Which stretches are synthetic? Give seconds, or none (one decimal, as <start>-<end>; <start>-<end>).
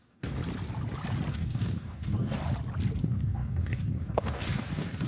0.0-0.4; 1.3-2.4; 3.0-5.1